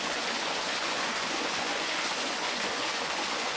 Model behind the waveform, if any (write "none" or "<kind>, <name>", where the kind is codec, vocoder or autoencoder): vocoder, Vocos